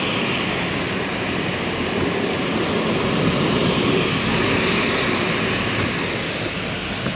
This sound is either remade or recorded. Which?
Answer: recorded